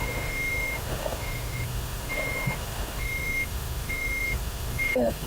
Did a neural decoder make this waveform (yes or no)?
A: yes